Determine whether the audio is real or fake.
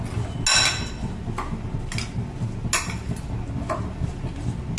real